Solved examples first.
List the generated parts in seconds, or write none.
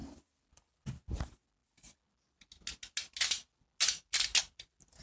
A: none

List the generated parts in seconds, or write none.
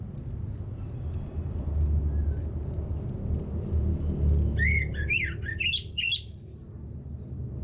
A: 4.9-5.5 (vocoder, BigVGAN v2)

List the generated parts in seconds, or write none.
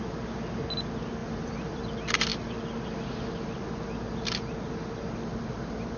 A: 1.2-1.8 (vocoder, BigVGAN v2)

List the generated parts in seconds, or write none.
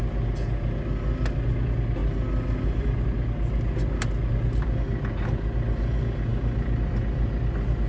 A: none